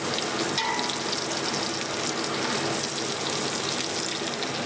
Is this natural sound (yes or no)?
yes